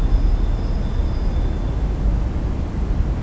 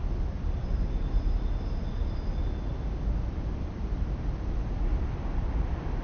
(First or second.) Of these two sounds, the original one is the first